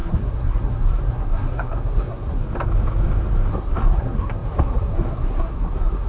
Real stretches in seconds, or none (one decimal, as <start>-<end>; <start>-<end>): 2.4-3.5